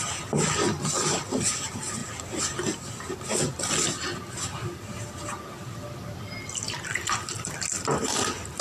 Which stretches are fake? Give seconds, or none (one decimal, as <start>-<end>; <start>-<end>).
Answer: none